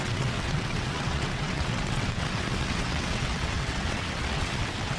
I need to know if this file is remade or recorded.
remade